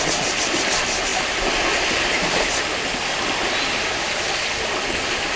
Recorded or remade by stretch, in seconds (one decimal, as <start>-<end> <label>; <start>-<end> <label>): 0.0-5.4 recorded